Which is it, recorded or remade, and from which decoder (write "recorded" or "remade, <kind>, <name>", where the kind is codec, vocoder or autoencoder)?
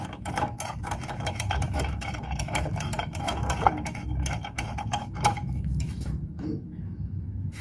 remade, autoencoder, DAC-VAE